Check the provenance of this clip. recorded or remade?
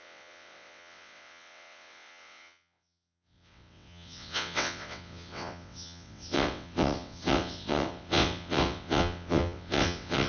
remade